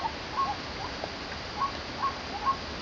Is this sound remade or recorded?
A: recorded